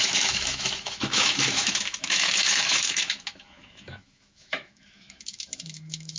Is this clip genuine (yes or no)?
no